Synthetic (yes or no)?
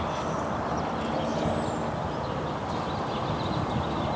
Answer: no